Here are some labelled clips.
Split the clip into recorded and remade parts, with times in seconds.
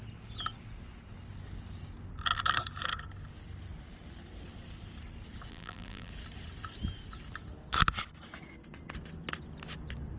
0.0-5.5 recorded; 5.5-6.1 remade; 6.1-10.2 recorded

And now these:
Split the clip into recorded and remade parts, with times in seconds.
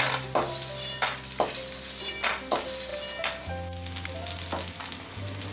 0.0-5.5 recorded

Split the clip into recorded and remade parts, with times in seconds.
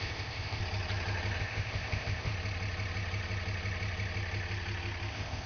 0.0-0.6 remade; 0.6-1.4 recorded; 1.4-2.3 remade; 2.3-5.1 recorded; 5.1-5.5 remade